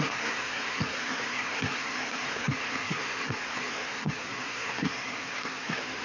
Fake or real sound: fake